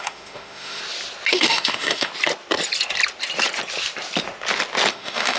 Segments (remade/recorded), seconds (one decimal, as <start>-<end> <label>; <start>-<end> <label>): 0.0-0.8 remade; 0.8-1.3 recorded; 1.3-2.1 remade; 2.1-4.9 recorded; 4.9-5.4 remade

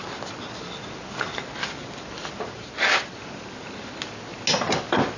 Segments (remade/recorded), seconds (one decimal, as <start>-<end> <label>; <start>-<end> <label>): 0.0-5.2 recorded